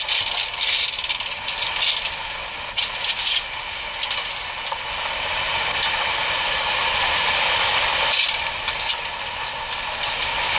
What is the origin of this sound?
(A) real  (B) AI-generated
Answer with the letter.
A